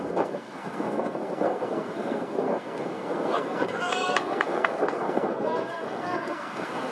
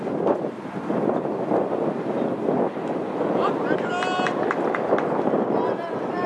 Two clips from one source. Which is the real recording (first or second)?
second